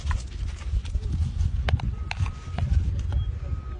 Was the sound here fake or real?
real